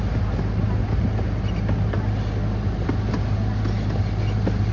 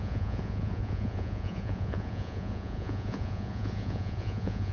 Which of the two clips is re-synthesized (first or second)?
second